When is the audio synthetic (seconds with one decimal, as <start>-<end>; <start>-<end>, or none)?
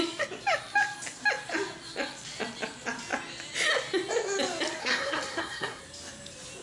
4.8-5.8